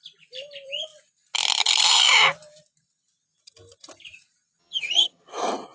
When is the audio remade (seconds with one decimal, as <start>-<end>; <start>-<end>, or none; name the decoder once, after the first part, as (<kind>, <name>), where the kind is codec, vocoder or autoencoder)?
4.6-5.3 (vocoder, HiFi-GAN)